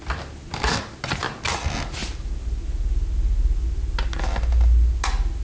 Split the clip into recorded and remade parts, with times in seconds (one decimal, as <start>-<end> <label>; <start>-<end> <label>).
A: 0.0-5.4 recorded